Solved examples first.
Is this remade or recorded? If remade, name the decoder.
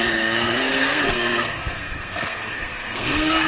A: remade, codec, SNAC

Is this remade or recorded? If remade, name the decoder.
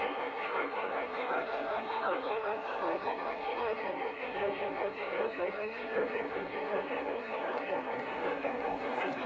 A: remade, codec, SNAC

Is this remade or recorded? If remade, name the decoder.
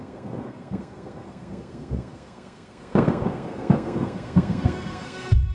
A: remade, codec, SNAC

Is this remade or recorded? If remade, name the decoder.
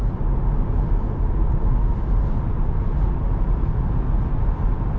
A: recorded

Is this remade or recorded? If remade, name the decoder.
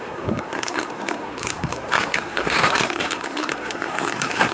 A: remade, codec, SNAC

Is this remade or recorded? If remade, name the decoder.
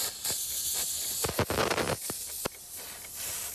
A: recorded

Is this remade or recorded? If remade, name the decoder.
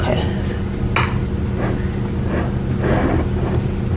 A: recorded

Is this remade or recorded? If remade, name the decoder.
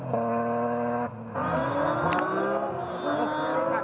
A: recorded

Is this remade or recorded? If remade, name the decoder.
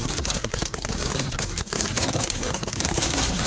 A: remade, codec, SNAC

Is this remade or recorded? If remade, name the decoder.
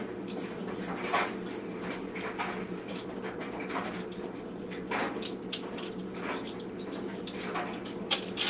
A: recorded